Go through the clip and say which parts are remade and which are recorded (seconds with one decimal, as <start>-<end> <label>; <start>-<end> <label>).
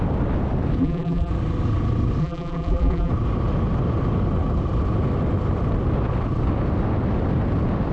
0.0-0.8 recorded; 0.8-1.3 remade; 1.3-2.2 recorded; 2.2-3.1 remade; 3.1-7.9 recorded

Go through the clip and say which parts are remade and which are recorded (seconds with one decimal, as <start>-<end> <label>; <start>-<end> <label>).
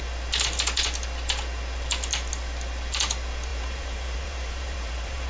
0.0-3.5 recorded; 3.5-5.3 remade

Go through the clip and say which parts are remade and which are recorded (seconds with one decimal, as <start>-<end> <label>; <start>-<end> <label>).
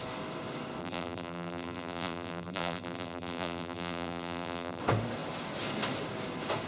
0.0-0.8 recorded; 0.8-4.8 remade; 4.8-6.7 recorded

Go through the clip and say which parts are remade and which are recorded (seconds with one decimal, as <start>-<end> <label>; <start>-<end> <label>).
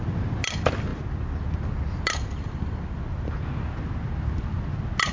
0.0-5.1 recorded